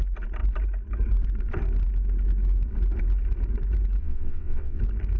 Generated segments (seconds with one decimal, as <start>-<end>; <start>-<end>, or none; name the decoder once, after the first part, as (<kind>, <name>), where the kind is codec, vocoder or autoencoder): 4.0-4.8 (vocoder, WaveNeXt)